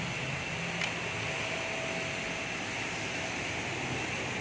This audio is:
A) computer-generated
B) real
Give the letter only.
B